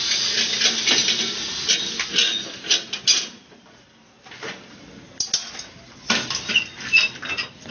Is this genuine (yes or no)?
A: yes